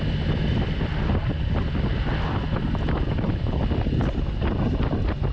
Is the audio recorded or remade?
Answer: recorded